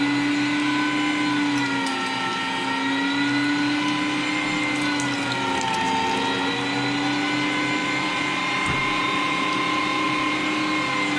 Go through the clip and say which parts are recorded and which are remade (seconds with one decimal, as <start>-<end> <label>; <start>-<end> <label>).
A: 0.0-7.8 recorded; 7.8-10.3 remade; 10.3-11.2 recorded